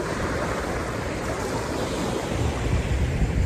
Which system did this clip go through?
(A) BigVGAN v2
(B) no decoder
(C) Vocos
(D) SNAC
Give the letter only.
A